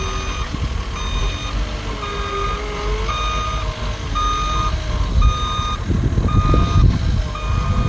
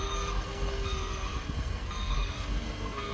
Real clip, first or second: first